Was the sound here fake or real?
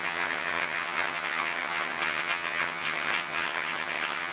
fake